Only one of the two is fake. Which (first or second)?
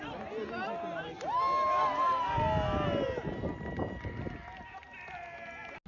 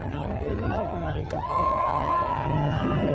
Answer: second